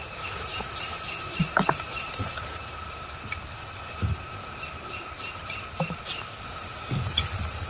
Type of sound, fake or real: fake